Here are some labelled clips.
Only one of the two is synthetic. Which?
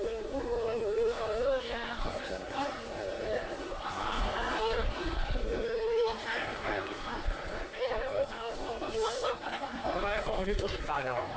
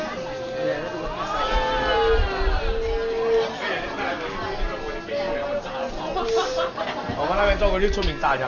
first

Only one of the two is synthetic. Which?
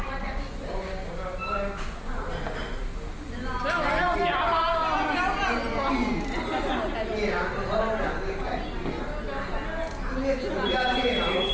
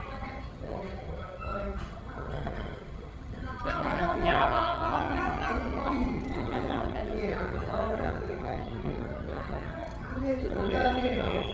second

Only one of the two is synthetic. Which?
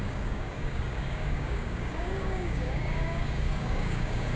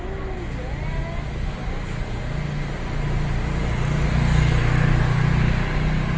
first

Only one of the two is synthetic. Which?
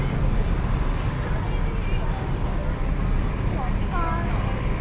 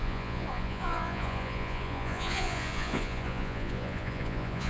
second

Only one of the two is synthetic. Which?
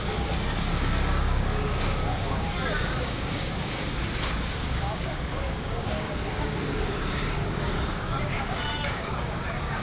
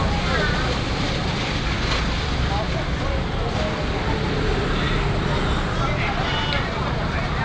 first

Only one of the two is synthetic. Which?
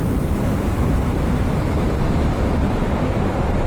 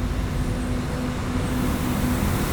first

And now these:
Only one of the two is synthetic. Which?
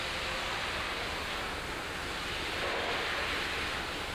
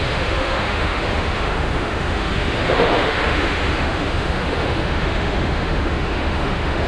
second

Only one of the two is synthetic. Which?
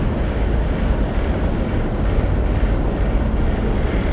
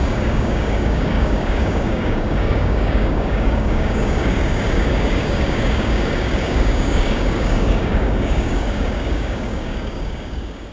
second